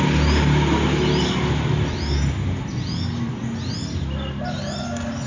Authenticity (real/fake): real